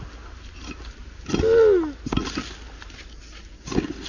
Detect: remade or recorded recorded